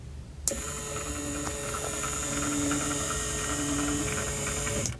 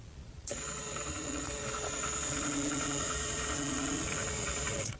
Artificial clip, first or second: second